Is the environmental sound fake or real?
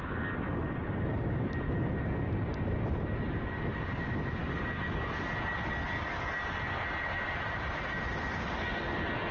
real